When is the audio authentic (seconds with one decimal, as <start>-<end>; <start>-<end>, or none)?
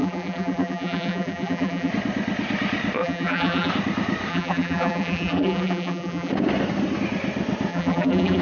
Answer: 1.9-3.0; 3.7-4.3; 6.3-7.7